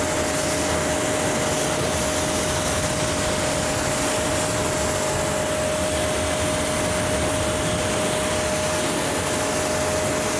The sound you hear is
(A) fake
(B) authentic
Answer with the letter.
B